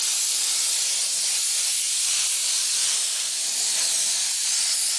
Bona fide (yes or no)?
yes